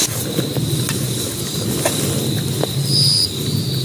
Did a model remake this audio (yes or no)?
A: no